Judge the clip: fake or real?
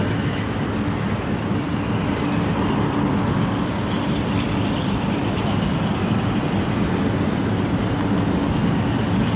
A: real